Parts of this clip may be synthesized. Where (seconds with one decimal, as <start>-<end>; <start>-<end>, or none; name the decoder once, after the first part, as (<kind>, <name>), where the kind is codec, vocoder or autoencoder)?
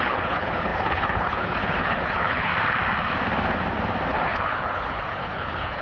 0.0-2.5 (codec, HILCodec); 4.1-5.8